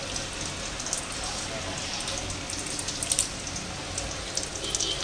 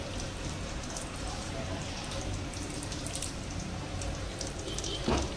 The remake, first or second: second